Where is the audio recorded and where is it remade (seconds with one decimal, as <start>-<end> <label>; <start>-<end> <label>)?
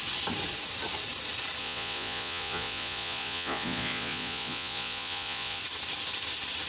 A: 0.0-1.6 recorded; 1.6-5.6 remade; 5.6-6.7 recorded